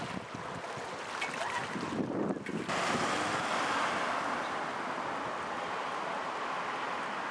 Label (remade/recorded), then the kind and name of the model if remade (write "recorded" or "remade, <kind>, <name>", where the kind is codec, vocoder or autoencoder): recorded